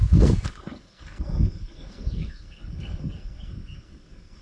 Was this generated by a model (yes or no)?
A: yes